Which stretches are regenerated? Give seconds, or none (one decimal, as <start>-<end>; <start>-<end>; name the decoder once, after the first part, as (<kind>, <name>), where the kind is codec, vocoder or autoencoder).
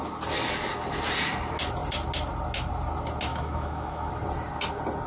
3.3-4.1 (autoencoder, DAC-VAE)